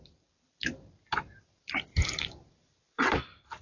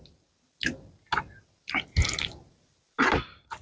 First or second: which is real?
second